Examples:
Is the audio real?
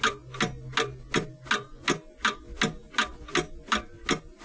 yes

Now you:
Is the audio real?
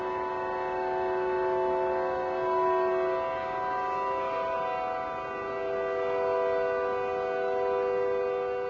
yes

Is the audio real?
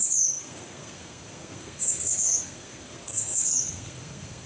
no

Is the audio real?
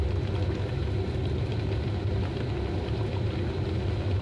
yes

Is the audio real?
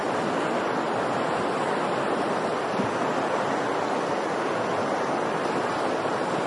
yes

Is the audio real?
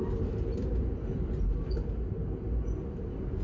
yes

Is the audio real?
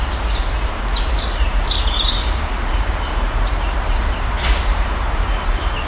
no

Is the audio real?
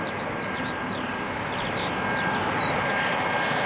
yes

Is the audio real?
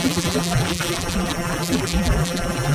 no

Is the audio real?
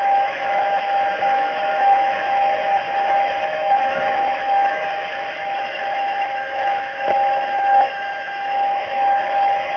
no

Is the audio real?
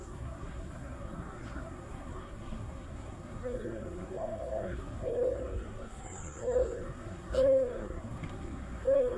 no